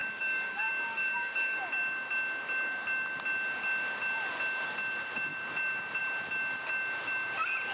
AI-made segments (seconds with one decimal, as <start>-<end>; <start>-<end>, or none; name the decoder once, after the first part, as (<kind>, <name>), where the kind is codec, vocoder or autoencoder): 0.0-1.6 (codec, DAC)